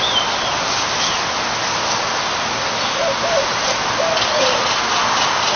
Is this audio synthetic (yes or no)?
no